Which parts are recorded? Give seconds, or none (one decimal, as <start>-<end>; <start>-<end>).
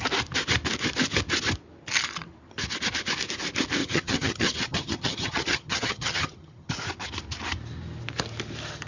0.0-3.8; 6.7-8.9